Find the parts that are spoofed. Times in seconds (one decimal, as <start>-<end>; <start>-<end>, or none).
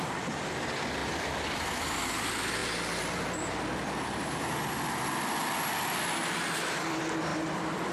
1.0-2.0; 7.3-7.9